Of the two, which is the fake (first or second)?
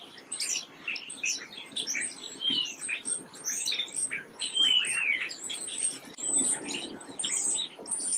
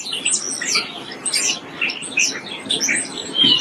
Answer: first